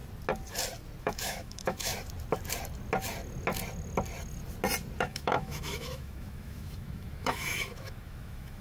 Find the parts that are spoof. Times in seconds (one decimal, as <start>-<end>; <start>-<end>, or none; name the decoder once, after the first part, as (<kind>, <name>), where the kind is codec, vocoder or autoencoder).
1.0-1.9 (autoencoder, DAC-VAE); 5.0-8.6